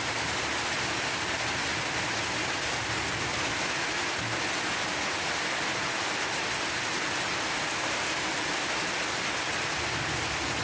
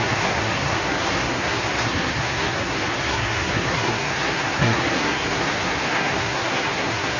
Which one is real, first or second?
first